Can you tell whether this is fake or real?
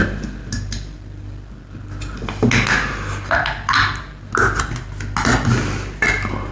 real